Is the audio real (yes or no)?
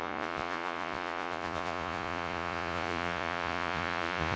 no